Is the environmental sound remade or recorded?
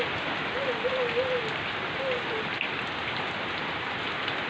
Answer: recorded